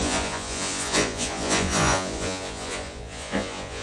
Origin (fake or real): fake